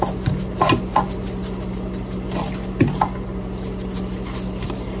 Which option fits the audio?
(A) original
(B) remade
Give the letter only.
A